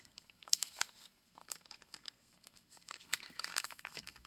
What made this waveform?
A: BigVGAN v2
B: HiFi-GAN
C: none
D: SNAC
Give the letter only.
D